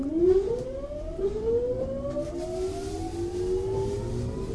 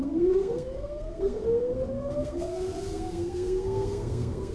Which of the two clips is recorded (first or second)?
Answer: first